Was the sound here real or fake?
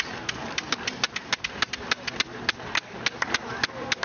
real